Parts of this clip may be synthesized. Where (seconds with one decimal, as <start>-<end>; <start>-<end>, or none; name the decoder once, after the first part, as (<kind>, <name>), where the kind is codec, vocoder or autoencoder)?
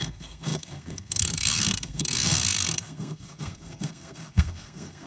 0.0-5.1 (codec, SNAC)